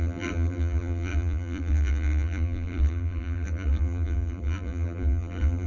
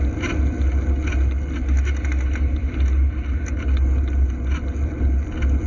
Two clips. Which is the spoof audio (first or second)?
first